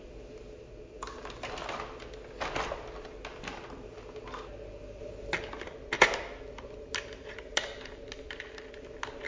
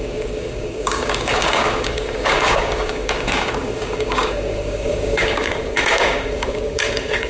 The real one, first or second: first